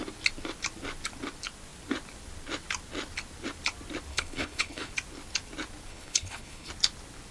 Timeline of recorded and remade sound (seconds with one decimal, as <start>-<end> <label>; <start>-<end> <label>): 0.0-4.1 recorded; 4.1-4.9 remade; 4.9-5.9 recorded; 5.9-6.7 remade; 6.7-7.3 recorded